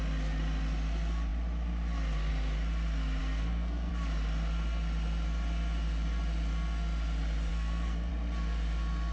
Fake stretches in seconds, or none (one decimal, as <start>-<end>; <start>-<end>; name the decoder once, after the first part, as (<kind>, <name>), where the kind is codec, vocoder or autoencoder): 3.2-3.9 (codec, SNAC); 7.5-8.1